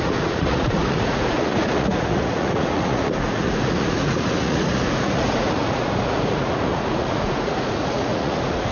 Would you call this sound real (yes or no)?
no